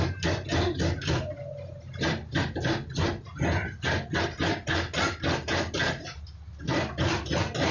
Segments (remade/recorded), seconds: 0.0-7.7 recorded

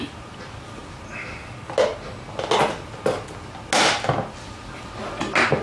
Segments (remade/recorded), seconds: 0.0-5.6 recorded

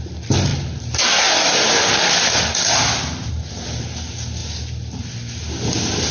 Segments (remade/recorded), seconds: 0.0-0.5 recorded; 0.5-3.3 remade; 3.3-6.1 recorded

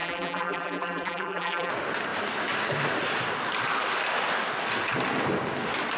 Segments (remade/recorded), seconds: 0.0-1.7 remade; 1.7-6.0 recorded